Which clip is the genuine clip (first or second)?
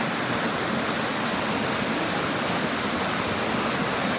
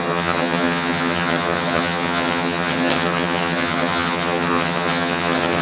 first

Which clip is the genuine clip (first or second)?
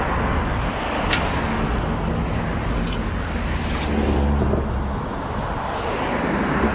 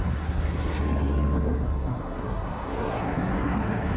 first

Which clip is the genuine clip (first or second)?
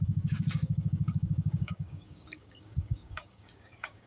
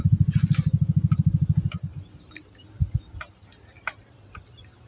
second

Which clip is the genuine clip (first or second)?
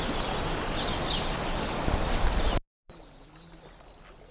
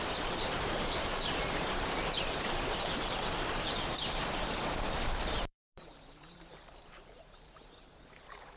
first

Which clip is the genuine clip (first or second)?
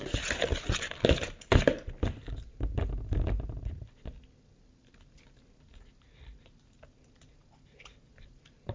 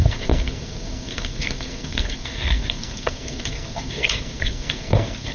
first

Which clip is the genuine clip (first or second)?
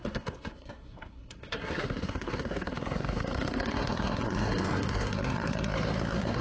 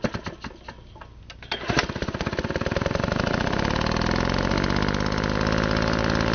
second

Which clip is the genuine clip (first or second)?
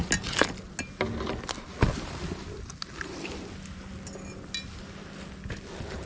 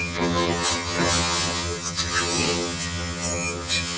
first